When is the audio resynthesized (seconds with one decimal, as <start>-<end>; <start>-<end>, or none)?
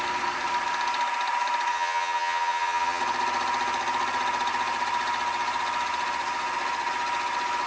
1.7-3.0